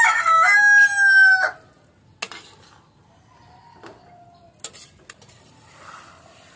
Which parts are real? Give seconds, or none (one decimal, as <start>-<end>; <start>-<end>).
0.0-6.6